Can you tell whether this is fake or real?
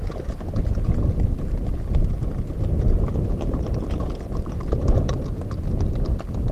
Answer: real